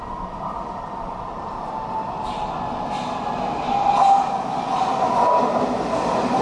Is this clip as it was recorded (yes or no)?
yes